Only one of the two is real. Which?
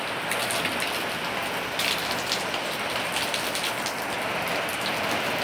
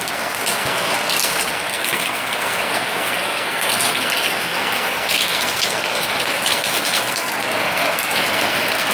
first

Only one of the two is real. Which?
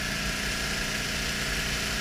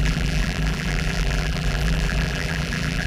first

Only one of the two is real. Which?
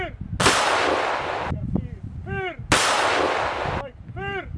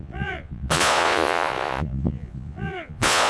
first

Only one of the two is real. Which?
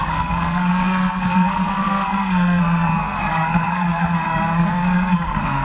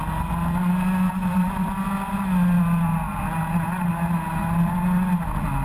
second